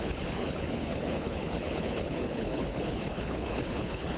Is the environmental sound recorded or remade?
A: remade